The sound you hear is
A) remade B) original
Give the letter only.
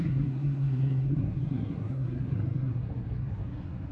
A